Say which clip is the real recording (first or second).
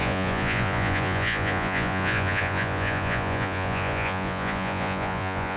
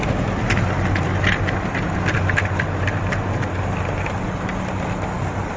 second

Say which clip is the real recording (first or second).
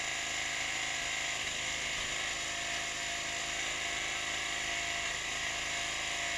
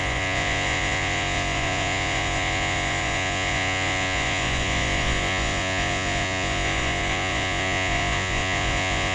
first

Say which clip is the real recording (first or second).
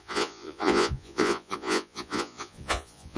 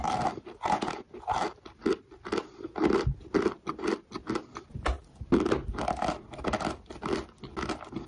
second